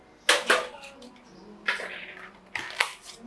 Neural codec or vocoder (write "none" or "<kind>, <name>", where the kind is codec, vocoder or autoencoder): none